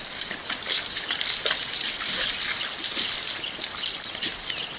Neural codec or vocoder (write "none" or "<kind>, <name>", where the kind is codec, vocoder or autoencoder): none